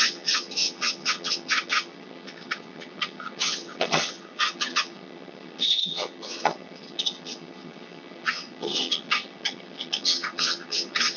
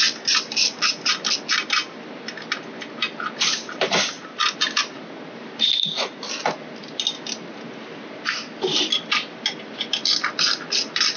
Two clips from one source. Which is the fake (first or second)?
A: first